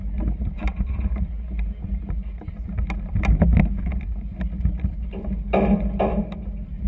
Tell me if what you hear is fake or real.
real